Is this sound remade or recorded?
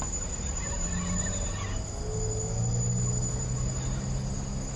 recorded